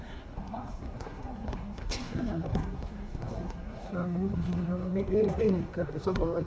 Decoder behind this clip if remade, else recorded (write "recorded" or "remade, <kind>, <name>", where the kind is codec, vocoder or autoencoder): remade, codec, SNAC